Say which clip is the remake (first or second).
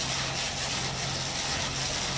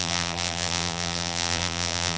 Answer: second